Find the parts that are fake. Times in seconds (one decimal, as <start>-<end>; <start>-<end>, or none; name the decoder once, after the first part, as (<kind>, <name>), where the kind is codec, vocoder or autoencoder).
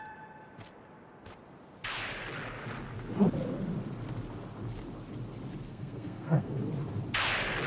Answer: 5.7-6.6 (codec, SNAC)